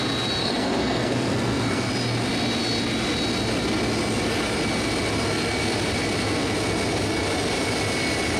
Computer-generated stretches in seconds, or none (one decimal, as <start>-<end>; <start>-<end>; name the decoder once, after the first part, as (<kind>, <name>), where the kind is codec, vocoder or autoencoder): 0.4-1.9 (codec, SNAC)